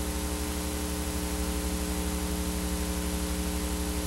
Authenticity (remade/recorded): recorded